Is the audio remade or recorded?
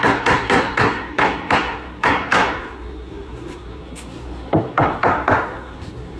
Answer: remade